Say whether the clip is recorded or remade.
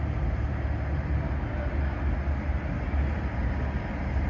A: recorded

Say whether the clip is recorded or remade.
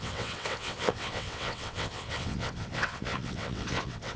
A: remade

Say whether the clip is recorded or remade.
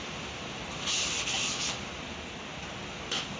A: recorded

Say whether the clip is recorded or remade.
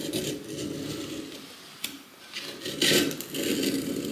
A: recorded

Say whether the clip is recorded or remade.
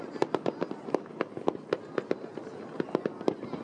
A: recorded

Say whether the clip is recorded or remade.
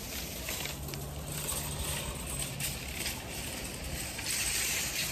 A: recorded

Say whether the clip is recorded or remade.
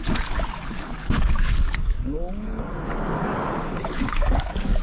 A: remade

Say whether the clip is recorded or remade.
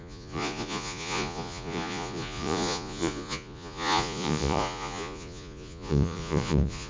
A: remade